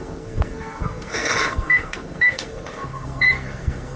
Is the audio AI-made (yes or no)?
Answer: yes